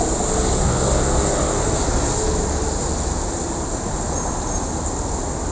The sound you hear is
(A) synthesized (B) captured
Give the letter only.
B